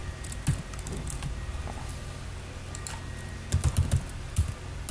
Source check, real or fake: real